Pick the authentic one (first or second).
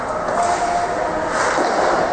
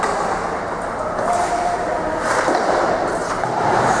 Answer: first